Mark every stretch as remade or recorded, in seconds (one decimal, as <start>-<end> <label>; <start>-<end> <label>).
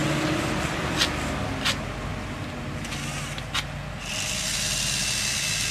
0.0-5.7 recorded